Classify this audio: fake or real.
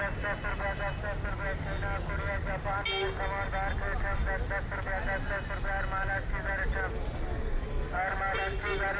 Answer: real